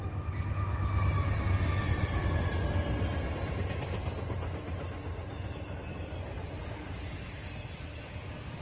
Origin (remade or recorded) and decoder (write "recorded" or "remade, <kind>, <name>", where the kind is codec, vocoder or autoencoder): recorded